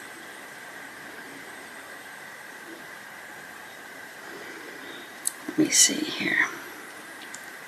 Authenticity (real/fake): fake